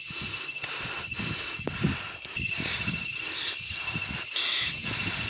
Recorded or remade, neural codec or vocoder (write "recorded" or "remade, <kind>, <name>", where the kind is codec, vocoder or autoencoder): recorded